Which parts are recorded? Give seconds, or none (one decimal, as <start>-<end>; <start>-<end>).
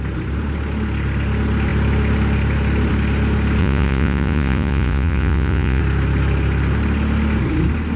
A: 0.0-3.6; 5.8-8.0